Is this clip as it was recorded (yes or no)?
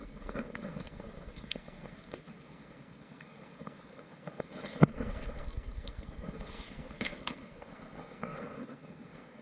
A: no